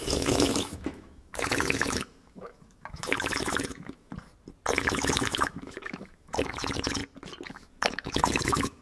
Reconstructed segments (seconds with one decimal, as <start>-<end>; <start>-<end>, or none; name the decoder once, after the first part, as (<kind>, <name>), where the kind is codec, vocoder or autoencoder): 0.0-4.1 (autoencoder, DAC-VAE); 4.7-7.0; 7.5-8.8